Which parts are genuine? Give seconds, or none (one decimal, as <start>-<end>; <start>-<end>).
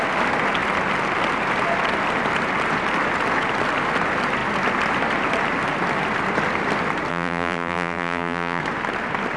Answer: 0.0-7.1; 8.6-9.4